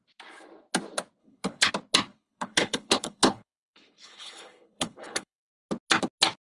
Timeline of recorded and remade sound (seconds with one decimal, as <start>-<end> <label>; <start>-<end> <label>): 0.0-1.2 recorded; 1.2-1.7 remade; 1.7-2.1 recorded; 2.1-5.5 remade; 5.5-6.5 recorded